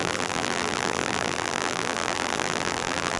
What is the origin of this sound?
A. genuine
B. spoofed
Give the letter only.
B